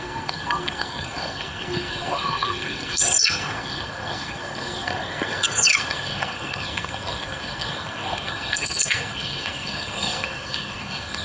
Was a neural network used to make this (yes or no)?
yes